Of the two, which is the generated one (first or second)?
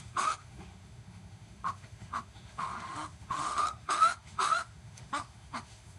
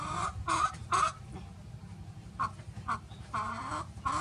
first